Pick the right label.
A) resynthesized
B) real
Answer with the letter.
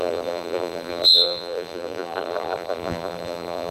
A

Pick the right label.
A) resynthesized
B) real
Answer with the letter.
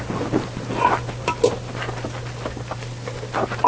B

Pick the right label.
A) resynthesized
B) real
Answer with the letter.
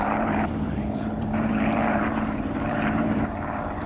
A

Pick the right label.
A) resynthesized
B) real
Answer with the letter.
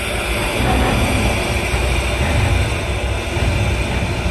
B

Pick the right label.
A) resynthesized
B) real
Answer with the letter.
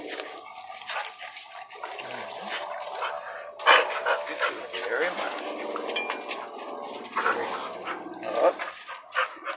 B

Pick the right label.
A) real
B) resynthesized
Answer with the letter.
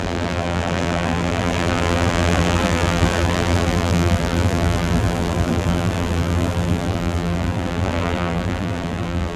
B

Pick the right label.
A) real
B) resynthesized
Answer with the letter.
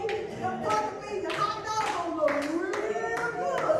A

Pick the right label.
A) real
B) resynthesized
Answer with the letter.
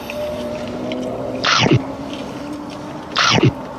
B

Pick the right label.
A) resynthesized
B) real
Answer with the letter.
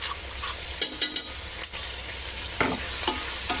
B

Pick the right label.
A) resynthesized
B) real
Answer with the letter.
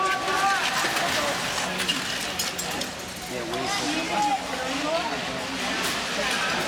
B